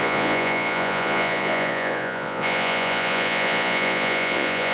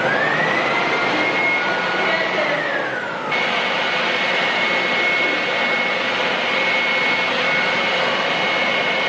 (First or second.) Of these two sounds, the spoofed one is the first